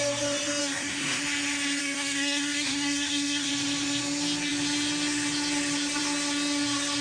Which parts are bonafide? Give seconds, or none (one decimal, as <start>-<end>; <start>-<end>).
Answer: 0.0-0.6; 1.2-1.8; 3.5-7.0